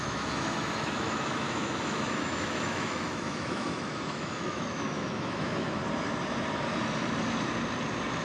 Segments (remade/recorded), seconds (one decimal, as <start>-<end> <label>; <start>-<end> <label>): 0.0-5.8 remade; 5.8-8.2 recorded